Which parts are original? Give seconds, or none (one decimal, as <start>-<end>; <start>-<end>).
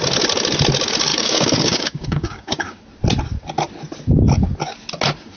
0.0-1.1; 2.8-5.4